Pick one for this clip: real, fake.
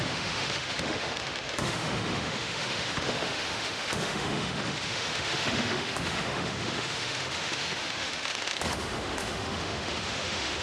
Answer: fake